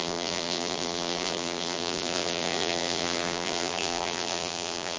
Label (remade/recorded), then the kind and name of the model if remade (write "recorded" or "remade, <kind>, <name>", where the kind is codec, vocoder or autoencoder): remade, vocoder, BigVGAN v2